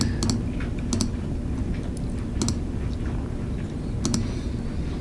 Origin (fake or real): real